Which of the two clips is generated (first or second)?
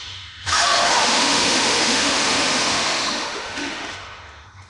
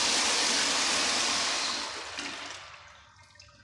first